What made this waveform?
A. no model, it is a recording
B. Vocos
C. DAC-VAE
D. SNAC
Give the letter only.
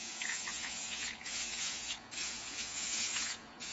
B